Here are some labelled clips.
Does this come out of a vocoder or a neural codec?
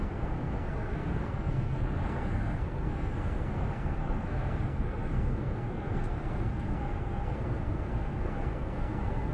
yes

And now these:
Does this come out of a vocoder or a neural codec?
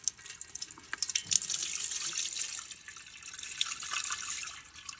no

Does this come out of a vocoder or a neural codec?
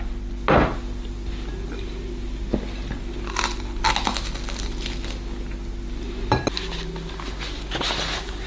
no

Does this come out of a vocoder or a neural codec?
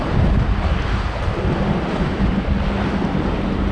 no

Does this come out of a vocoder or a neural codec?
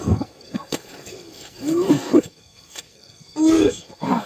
yes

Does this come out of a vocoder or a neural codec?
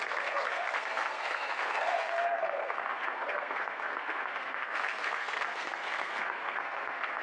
yes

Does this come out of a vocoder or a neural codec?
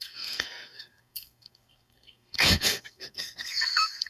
yes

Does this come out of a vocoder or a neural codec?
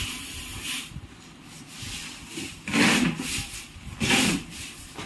no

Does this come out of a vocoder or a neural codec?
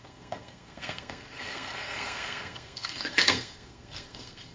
yes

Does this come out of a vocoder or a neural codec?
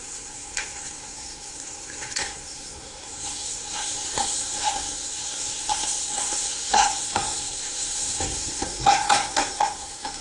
yes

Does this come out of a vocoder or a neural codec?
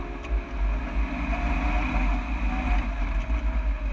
no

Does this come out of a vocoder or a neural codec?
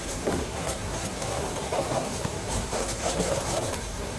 yes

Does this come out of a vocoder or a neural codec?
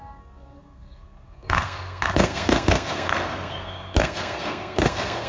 yes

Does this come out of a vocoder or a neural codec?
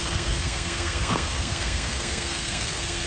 yes